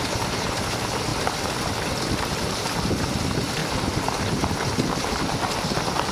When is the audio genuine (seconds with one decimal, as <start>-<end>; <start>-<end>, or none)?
1.1-2.2